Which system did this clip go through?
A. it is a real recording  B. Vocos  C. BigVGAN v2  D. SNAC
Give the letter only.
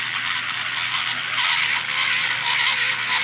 A